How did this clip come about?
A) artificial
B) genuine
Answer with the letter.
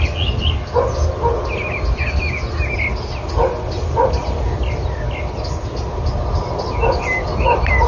B